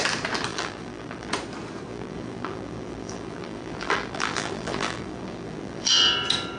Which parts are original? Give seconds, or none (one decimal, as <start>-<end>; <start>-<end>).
0.0-0.5; 1.3-1.9; 5.9-6.6